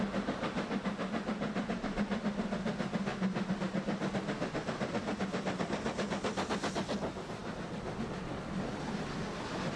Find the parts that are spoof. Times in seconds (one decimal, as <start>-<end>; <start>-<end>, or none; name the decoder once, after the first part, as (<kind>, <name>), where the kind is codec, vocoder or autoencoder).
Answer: none